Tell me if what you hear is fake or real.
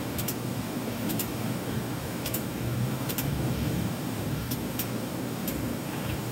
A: fake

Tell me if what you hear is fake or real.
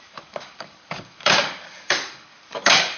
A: fake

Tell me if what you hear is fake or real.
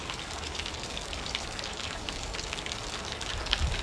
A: fake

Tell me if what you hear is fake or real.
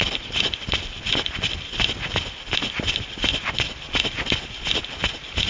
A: real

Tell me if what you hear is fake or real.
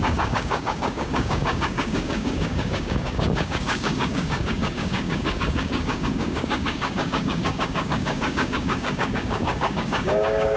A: fake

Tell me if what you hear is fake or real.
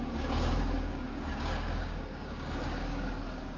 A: fake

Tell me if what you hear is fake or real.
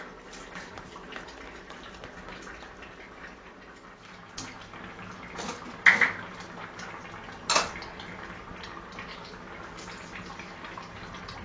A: real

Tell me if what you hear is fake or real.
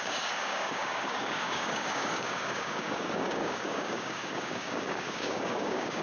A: fake